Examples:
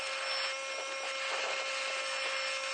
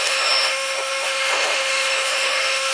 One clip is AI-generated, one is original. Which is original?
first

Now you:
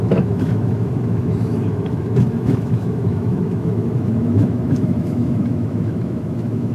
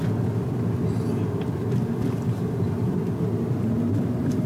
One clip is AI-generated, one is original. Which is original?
second